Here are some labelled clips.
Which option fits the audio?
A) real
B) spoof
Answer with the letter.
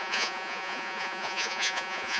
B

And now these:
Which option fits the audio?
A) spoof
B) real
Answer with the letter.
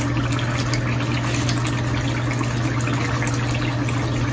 B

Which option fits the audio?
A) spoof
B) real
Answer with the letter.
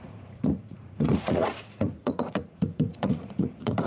A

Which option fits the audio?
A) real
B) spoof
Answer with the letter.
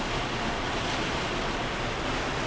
A